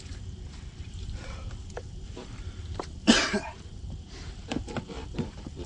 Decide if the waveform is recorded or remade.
remade